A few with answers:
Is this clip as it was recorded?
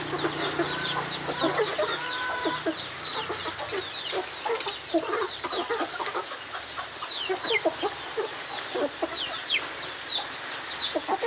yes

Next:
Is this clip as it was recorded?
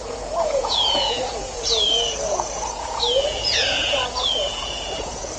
no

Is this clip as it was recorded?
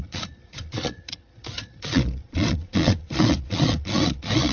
no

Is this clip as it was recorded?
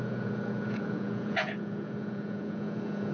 no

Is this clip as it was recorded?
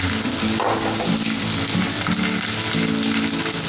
yes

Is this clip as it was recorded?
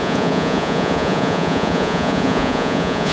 no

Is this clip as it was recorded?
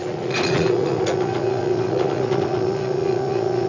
no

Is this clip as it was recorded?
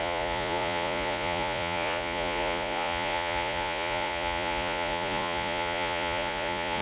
no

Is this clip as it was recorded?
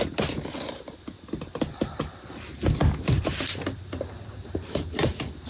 yes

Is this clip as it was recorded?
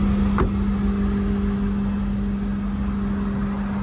yes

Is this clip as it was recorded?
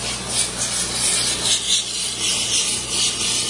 yes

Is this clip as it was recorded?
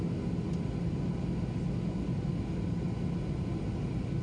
yes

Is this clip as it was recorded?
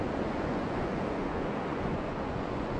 no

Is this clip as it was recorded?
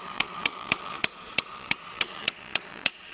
no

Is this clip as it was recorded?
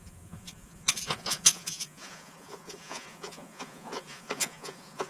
no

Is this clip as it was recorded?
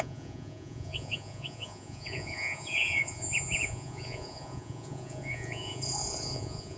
no